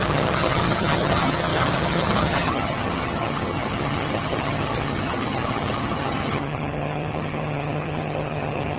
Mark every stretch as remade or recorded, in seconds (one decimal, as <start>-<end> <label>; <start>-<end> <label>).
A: 0.0-8.8 remade